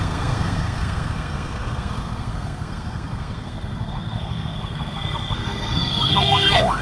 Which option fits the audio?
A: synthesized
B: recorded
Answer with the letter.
A